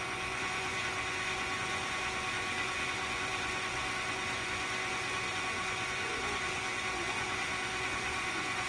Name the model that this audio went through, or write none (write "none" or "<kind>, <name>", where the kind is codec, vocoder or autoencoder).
vocoder, Vocos